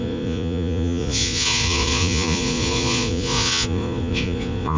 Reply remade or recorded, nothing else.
remade